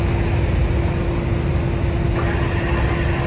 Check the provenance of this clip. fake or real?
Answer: real